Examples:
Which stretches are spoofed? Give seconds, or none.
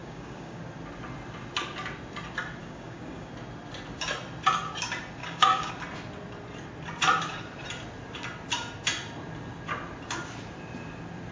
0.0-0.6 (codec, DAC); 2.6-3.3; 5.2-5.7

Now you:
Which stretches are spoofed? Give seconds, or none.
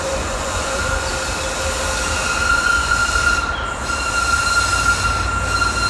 0.0-1.1 (vocoder, Vocos); 2.5-3.0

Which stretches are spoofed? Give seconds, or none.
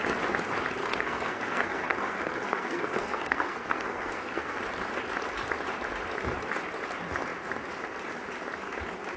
0.8-4.6 (codec, SNAC)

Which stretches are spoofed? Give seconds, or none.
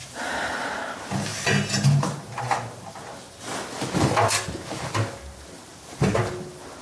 none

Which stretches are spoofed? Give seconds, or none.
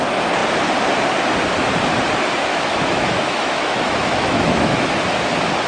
2.5-5.0 (autoencoder, DAC-VAE)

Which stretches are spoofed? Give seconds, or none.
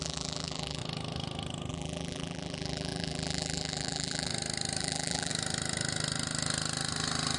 0.0-0.8 (vocoder, BigVGAN v2); 1.7-4.3; 4.8-5.3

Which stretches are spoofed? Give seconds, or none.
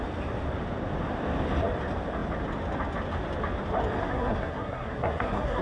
4.0-5.6 (codec, SNAC)